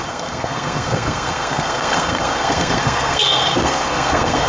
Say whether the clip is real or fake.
fake